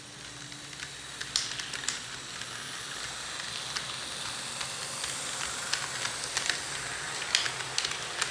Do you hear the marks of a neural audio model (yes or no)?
no